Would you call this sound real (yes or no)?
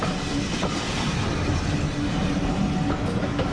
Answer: yes